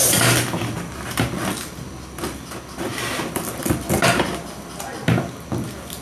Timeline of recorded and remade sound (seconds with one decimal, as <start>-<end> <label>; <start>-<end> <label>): 0.0-6.0 recorded